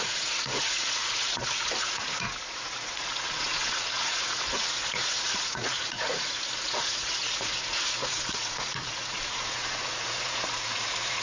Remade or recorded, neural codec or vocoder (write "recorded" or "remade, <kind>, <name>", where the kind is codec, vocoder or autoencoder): remade, vocoder, Vocos